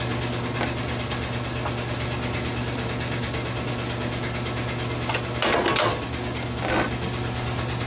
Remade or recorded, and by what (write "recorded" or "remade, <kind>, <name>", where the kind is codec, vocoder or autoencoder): recorded